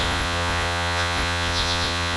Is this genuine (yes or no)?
no